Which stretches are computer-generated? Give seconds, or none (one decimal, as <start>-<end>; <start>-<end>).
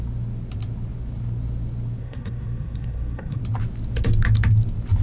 2.0-3.4